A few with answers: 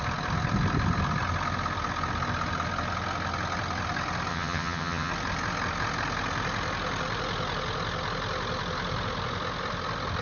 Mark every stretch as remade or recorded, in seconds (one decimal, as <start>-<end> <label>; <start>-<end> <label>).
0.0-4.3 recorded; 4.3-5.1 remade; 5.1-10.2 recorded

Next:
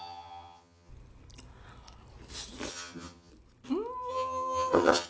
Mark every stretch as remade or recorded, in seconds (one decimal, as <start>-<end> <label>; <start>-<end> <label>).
0.0-0.9 remade; 0.9-2.7 recorded; 2.7-3.3 remade; 3.3-4.1 recorded; 4.1-5.1 remade

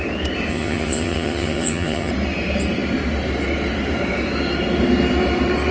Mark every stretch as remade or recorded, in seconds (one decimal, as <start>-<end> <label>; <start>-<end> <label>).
0.0-0.5 recorded; 0.5-2.1 remade; 2.1-5.7 recorded